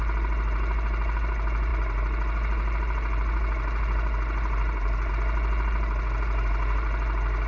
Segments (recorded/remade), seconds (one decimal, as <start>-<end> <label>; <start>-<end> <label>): 0.0-7.5 recorded